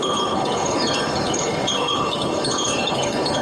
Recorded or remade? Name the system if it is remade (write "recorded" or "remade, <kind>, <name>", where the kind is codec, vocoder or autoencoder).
remade, codec, HILCodec